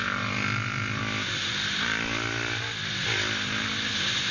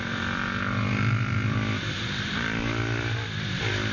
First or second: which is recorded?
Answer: first